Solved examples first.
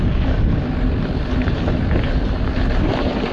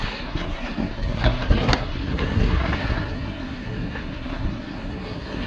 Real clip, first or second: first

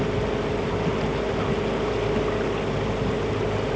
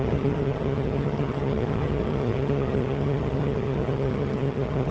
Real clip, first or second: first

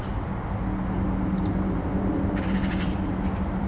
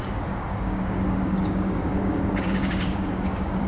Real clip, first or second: first